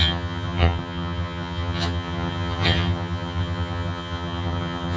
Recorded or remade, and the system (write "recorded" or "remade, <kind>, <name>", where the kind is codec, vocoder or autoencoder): remade, vocoder, HiFi-GAN